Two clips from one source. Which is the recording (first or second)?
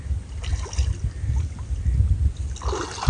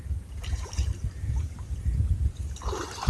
first